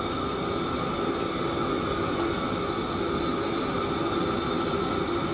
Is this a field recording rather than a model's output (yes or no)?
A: yes